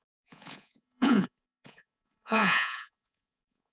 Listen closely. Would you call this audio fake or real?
fake